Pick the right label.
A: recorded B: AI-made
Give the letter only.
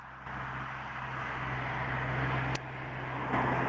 A